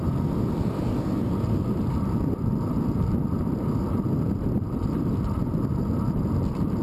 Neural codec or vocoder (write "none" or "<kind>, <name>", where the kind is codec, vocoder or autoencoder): none